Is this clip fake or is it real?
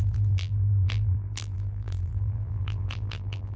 fake